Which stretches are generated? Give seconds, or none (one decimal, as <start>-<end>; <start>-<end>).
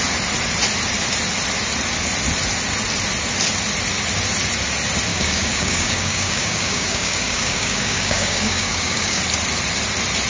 5.1-9.2